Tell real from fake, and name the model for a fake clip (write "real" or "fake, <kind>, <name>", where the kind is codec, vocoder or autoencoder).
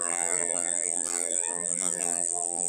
fake, vocoder, BigVGAN v2